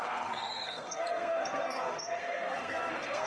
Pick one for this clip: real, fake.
fake